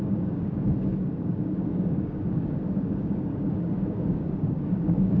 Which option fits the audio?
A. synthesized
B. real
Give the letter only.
A